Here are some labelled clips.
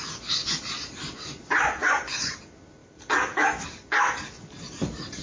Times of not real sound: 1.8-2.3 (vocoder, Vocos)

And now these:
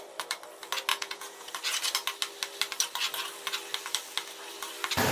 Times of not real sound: 0.9-1.5 (vocoder, Vocos)

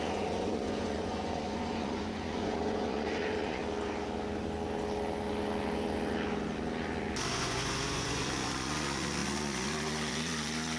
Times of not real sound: 0.0-3.6 (vocoder, Vocos); 7.3-10.8

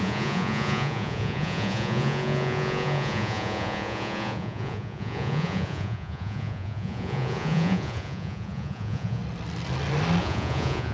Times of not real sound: 0.0-9.2 (vocoder, Vocos); 10.2-10.9

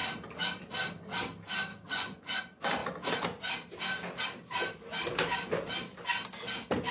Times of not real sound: 1.7-2.4 (vocoder, Vocos)

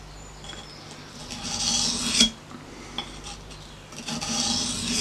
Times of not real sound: none

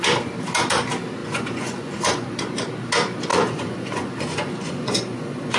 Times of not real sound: 1.2-2.4 (vocoder, Vocos); 3.3-5.6